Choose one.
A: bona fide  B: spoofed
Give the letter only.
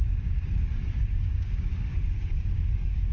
B